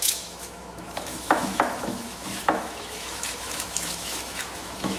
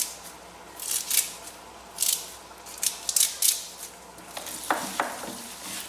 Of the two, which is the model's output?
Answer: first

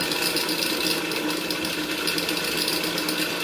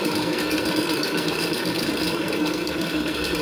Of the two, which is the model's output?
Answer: second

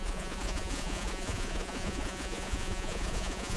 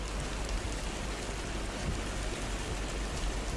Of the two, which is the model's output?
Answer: first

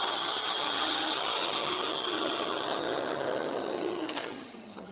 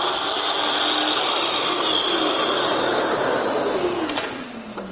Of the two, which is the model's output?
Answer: first